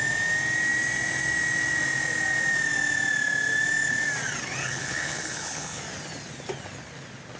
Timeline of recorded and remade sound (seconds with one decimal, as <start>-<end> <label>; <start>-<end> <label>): 0.0-4.6 recorded; 4.6-5.8 remade; 5.8-7.4 recorded